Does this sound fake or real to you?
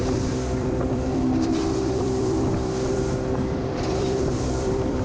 fake